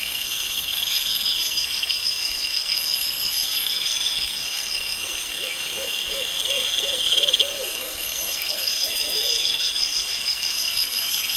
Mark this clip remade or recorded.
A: remade